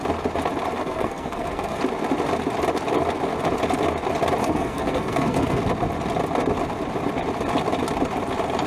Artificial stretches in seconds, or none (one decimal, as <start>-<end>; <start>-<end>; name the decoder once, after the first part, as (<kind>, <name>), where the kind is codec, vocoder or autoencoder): 0.8-1.8 (codec, SNAC); 4.4-5.6